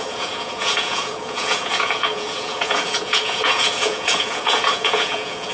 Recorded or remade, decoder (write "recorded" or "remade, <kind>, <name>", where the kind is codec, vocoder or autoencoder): remade, vocoder, Vocos